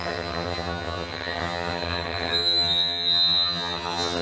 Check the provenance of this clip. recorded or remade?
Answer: remade